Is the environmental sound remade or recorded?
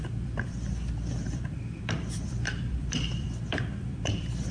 remade